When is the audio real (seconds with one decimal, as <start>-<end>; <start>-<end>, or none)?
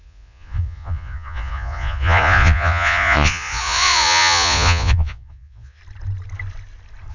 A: 5.8-7.1